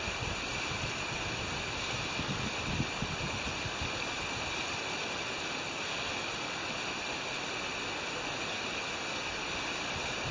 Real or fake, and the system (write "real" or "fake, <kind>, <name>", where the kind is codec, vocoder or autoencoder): real